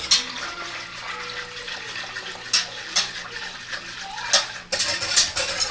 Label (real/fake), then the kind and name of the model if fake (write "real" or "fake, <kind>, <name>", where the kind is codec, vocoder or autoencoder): real